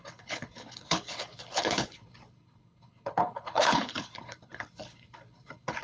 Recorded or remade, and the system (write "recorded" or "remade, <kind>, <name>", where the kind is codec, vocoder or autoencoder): remade, codec, HILCodec